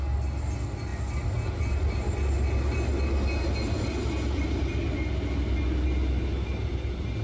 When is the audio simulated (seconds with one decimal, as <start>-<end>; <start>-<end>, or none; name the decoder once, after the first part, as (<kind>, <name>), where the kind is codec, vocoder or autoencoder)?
none